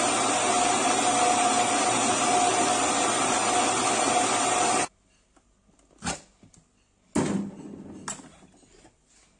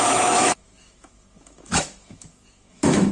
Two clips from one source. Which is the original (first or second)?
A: first